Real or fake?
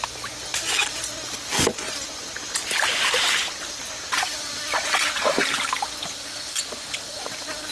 real